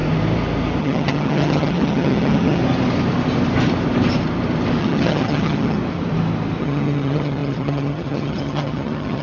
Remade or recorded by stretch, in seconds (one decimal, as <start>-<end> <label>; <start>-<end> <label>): 0.0-0.8 recorded; 0.8-2.6 remade; 2.6-4.8 recorded; 4.8-5.8 remade; 5.8-6.6 recorded; 6.6-9.2 remade